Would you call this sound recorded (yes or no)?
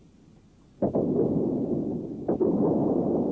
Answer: yes